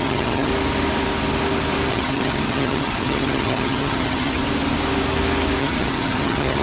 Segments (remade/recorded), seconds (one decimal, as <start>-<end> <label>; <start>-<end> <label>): 0.0-0.5 remade; 0.5-1.9 recorded; 1.9-4.4 remade; 4.4-5.6 recorded; 5.6-6.6 remade